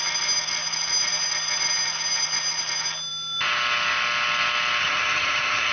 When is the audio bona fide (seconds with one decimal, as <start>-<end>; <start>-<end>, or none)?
0.0-4.8